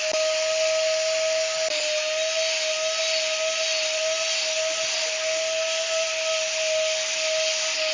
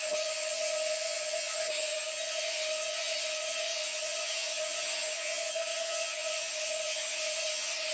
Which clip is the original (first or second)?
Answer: first